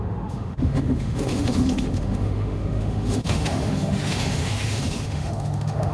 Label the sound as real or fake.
fake